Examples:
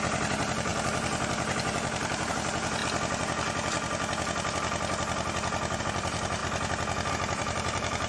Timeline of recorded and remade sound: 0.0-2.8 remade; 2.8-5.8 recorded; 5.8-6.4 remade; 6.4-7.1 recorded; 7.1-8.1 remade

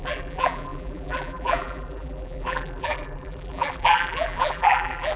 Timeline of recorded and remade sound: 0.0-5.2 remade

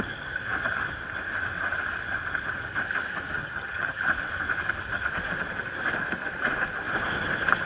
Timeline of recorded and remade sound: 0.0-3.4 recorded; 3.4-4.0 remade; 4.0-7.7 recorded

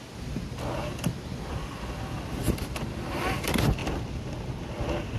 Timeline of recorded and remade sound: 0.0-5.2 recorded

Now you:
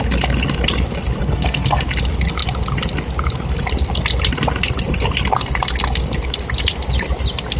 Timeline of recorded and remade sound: 0.0-1.2 recorded; 1.2-1.8 remade; 1.8-7.6 recorded

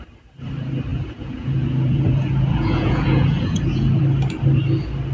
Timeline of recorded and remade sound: 0.0-0.9 recorded; 0.9-4.0 remade; 4.0-5.1 recorded

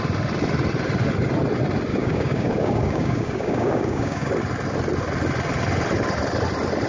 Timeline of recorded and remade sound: 0.0-1.9 recorded; 1.9-4.3 remade; 4.3-6.9 recorded